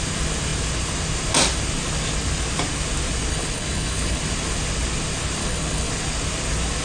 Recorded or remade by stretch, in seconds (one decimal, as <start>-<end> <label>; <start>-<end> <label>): 0.0-3.3 recorded; 3.3-4.2 remade; 4.2-5.4 recorded; 5.4-5.9 remade; 5.9-6.8 recorded